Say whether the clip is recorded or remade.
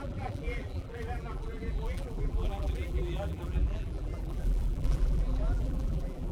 remade